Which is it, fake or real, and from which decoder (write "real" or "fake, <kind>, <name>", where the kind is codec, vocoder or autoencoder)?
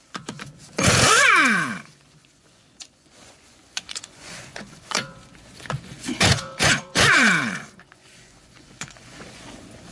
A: fake, vocoder, Vocos